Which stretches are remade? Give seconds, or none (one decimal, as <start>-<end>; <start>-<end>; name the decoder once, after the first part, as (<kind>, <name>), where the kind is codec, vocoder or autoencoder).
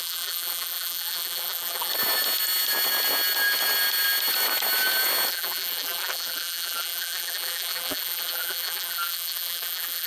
0.0-1.9 (vocoder, BigVGAN v2); 5.3-10.1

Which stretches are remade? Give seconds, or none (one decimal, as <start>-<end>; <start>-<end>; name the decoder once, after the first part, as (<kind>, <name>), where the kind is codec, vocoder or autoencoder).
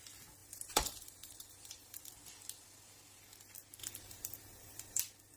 0.4-2.1 (vocoder, BigVGAN v2); 3.8-5.0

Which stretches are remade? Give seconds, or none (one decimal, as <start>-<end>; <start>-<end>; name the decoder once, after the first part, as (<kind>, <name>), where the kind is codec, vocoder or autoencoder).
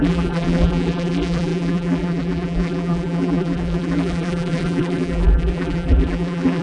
0.0-6.6 (vocoder, BigVGAN v2)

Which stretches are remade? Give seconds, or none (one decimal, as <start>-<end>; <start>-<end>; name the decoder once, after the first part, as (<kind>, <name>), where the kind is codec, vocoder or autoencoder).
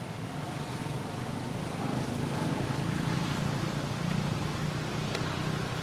none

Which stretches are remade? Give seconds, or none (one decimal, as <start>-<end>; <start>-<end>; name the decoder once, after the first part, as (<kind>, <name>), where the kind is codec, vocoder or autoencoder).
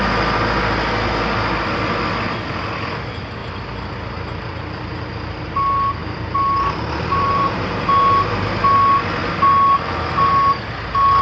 6.0-8.5 (vocoder, BigVGAN v2)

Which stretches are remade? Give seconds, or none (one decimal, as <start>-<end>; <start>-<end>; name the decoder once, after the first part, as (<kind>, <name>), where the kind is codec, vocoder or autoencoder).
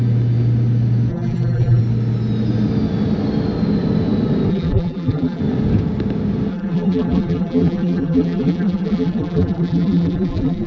1.1-1.8 (vocoder, BigVGAN v2); 4.5-5.4; 6.5-10.7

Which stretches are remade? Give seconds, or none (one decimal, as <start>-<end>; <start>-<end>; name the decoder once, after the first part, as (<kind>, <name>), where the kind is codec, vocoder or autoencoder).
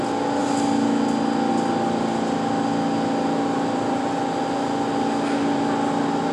none